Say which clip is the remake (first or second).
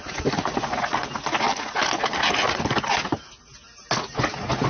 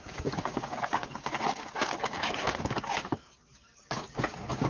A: second